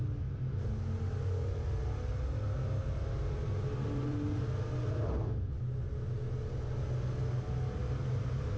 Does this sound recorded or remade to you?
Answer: recorded